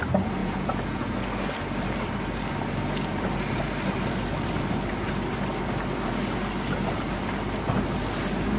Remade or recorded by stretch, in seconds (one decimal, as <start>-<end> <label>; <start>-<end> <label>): 0.0-0.4 recorded; 0.4-1.1 remade; 1.1-8.6 recorded